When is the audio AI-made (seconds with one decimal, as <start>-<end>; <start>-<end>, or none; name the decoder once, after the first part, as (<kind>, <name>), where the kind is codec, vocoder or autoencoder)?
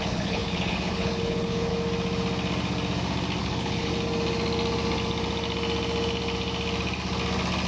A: 0.0-1.7 (codec, HILCodec); 3.4-3.9